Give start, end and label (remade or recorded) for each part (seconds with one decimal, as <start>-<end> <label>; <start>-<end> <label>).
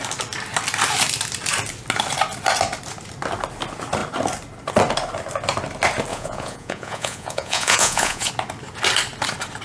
0.0-6.1 recorded; 6.1-8.3 remade; 8.3-9.6 recorded